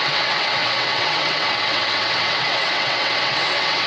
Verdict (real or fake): fake